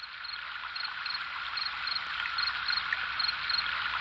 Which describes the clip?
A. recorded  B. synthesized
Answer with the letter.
A